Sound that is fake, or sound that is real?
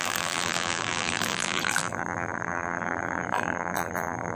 fake